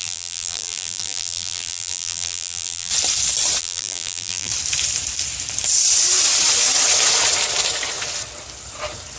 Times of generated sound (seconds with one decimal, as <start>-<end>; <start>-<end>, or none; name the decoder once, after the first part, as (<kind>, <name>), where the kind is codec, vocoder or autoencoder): 0.0-2.9 (vocoder, BigVGAN v2); 3.6-4.5